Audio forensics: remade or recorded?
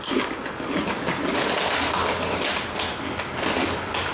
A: recorded